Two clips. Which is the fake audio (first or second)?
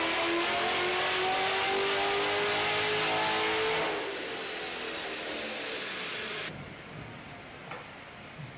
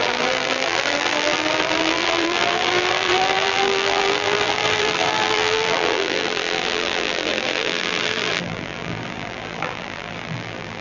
second